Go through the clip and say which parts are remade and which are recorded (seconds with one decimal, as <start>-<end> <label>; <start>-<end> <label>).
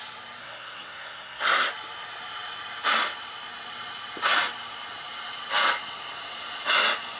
0.0-0.4 recorded; 0.4-1.7 remade; 1.7-7.2 recorded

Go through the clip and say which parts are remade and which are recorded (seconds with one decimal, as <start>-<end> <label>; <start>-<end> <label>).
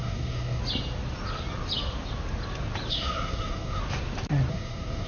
0.0-0.6 remade; 0.6-2.9 recorded; 2.9-3.8 remade; 3.8-4.5 recorded; 4.5-5.1 remade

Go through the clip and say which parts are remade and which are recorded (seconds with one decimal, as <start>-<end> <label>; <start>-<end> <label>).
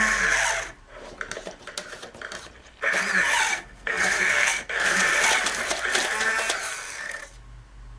0.0-3.5 recorded; 3.5-5.0 remade; 5.0-6.6 recorded; 6.6-7.2 remade; 7.2-8.0 recorded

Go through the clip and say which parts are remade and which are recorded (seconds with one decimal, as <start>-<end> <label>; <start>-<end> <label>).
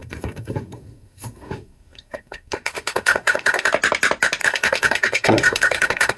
0.0-3.7 remade; 3.7-4.4 recorded; 4.4-6.2 remade